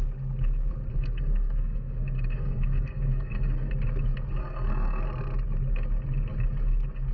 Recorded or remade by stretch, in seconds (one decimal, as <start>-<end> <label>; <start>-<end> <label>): 0.0-0.9 recorded; 0.9-3.7 remade; 3.7-4.4 recorded; 4.4-5.0 remade; 5.0-7.1 recorded

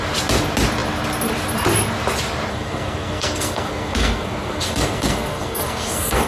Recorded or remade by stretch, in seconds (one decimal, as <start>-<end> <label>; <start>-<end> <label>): 0.0-2.5 recorded; 2.5-6.3 remade

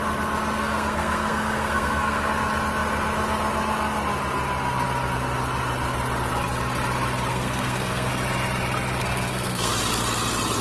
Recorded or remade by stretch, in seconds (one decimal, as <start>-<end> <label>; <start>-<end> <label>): 0.0-0.6 recorded; 0.6-2.3 remade; 2.3-7.3 recorded; 7.3-8.1 remade; 8.1-9.0 recorded; 9.0-9.7 remade; 9.7-10.6 recorded

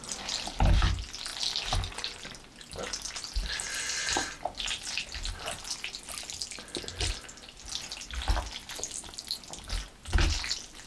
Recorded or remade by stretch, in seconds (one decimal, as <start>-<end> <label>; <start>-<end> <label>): 0.0-10.9 recorded